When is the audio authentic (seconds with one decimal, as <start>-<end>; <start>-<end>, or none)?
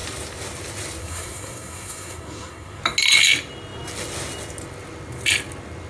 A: 0.0-1.0; 2.8-5.9